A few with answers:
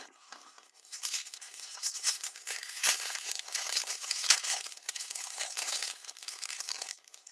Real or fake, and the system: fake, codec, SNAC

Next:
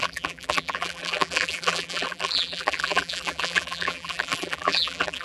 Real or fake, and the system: fake, vocoder, BigVGAN v2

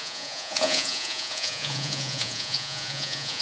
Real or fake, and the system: fake, vocoder, Vocos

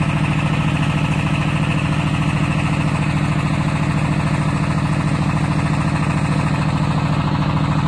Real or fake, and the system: real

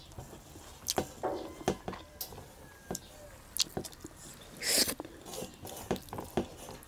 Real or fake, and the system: real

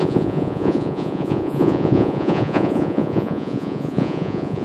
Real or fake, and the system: fake, vocoder, Vocos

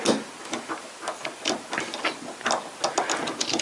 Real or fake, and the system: real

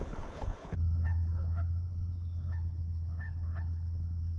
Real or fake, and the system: fake, codec, HILCodec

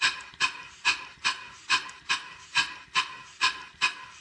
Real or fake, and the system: fake, vocoder, BigVGAN v2